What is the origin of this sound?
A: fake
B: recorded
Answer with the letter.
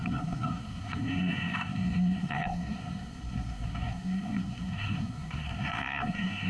A